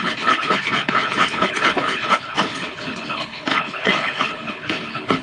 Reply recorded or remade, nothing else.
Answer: remade